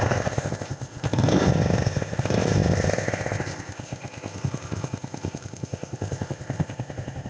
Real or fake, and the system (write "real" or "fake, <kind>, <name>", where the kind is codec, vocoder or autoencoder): fake, codec, ZipCodec